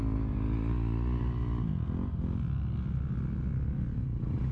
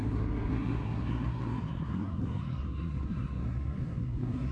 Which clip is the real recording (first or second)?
first